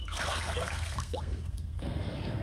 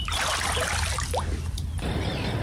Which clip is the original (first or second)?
second